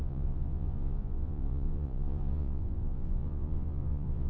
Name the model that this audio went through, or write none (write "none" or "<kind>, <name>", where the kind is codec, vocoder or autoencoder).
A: vocoder, Vocos